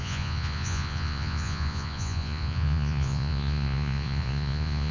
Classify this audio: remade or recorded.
remade